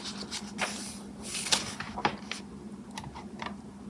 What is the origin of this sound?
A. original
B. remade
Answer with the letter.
A